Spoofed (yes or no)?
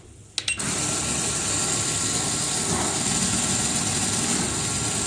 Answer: no